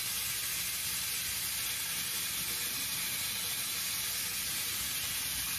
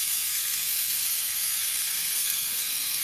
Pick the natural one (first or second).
first